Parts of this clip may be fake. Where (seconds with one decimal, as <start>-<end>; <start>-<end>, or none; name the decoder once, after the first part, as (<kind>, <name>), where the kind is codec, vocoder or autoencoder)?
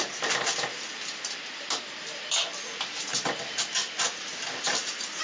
3.8-5.2 (vocoder, BigVGAN v2)